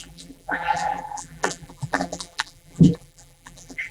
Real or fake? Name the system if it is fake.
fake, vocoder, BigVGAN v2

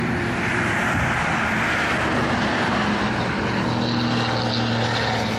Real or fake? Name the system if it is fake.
real